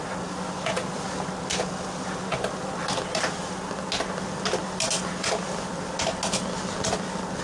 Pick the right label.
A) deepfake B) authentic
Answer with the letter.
B